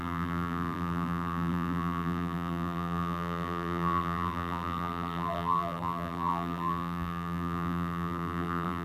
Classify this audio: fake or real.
fake